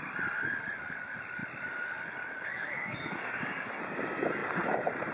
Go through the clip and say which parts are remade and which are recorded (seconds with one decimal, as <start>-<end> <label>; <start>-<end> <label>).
0.0-2.5 recorded; 2.5-3.7 remade; 3.7-5.1 recorded